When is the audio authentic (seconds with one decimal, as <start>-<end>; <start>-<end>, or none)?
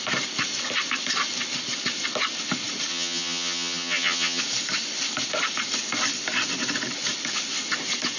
0.0-2.9; 4.4-8.2